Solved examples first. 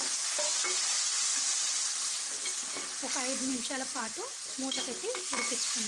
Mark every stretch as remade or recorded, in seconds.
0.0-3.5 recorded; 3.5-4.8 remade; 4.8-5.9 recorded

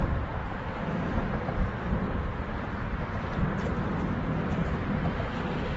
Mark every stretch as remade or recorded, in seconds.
0.0-0.4 recorded; 0.4-3.9 remade; 3.9-5.8 recorded